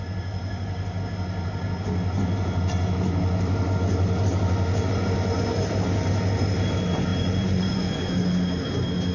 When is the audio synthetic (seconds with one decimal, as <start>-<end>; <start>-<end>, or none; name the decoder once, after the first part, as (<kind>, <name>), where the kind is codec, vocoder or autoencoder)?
7.1-8.1 (vocoder, Vocos)